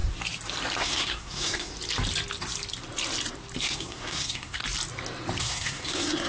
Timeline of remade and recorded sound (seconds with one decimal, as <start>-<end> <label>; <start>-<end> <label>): 0.0-0.8 recorded; 0.8-1.7 remade; 1.7-3.6 recorded; 3.6-4.6 remade; 4.6-5.4 recorded; 5.4-6.3 remade